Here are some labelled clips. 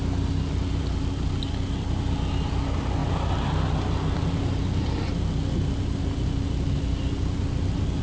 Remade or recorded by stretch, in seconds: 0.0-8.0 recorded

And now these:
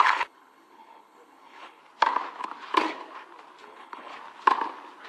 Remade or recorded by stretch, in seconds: 0.0-1.8 remade; 1.8-3.6 recorded; 3.6-4.1 remade; 4.1-5.1 recorded

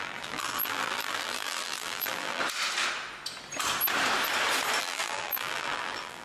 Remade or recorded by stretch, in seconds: 0.0-2.4 remade; 2.4-4.8 recorded; 4.8-6.2 remade

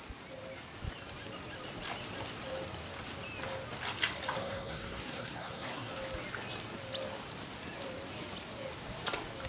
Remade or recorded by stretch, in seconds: 0.0-4.4 recorded; 4.4-5.9 remade; 5.9-9.5 recorded

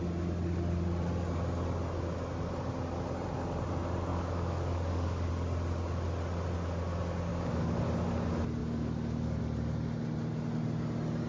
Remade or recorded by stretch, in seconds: 0.0-4.1 recorded; 4.1-5.3 remade; 5.3-7.3 recorded; 7.3-7.8 remade; 7.8-8.6 recorded; 8.6-9.4 remade; 9.4-11.3 recorded

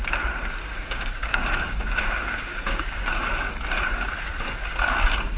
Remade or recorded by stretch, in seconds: 0.0-0.6 recorded; 0.6-3.6 remade; 3.6-5.4 recorded

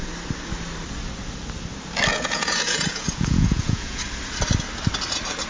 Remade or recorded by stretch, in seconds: 0.0-2.1 recorded; 2.1-4.0 remade; 4.0-5.5 recorded